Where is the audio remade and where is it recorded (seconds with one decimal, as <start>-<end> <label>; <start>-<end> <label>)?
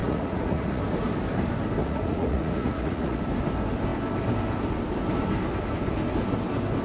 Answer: 0.0-0.8 remade; 0.8-1.8 recorded; 1.8-3.2 remade; 3.2-6.8 recorded